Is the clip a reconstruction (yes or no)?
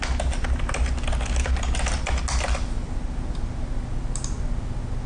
no